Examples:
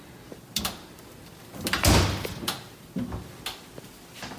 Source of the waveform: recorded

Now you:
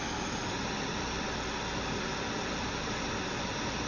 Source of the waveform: remade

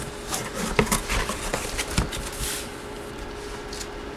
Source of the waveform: recorded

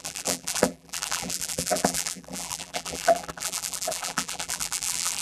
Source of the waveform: remade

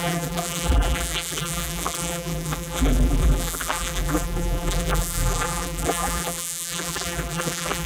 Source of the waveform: remade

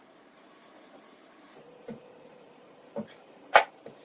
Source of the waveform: remade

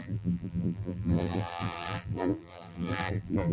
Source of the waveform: remade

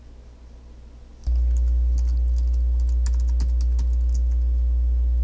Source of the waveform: recorded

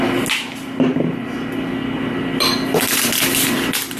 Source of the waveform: recorded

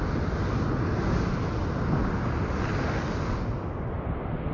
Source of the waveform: recorded